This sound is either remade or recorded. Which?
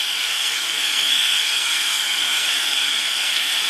remade